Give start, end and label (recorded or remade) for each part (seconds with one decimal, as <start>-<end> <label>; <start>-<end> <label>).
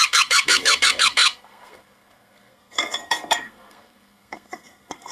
0.0-5.1 remade